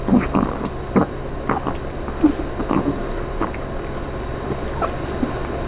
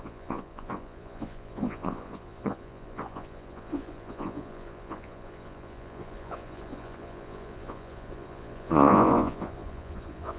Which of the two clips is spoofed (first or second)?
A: second